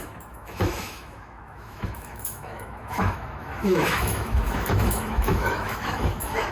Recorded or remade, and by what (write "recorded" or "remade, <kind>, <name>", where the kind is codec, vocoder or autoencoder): remade, autoencoder, DAC-VAE